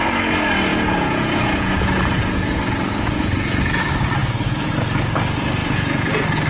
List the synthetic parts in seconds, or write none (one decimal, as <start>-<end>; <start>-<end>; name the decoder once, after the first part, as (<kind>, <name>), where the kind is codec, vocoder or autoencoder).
0.7-3.8 (vocoder, Vocos); 4.2-4.7; 5.6-6.1